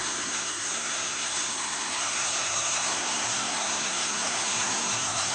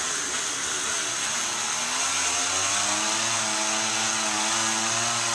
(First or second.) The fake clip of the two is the first